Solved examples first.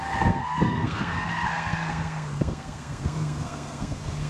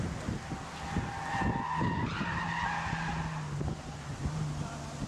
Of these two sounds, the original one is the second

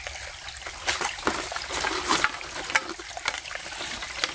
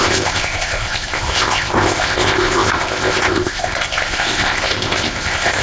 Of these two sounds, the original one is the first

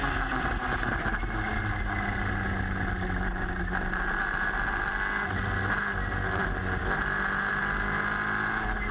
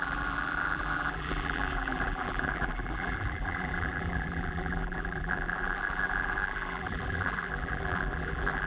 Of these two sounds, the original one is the first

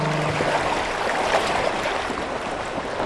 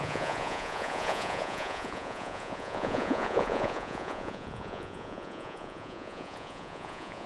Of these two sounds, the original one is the first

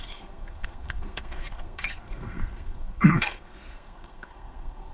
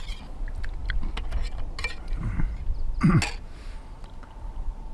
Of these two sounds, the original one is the second